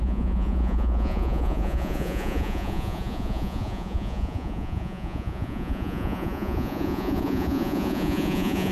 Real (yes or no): no